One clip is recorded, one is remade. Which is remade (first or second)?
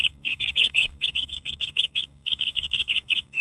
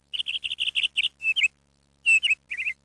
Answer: first